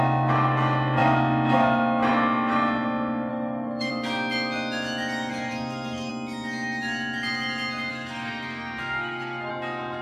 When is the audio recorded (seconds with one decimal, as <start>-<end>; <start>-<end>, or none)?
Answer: 0.0-3.3; 3.9-5.3; 6.1-7.9; 9.5-10.0